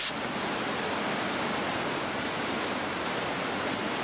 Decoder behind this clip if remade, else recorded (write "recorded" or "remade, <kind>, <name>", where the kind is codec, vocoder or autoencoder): recorded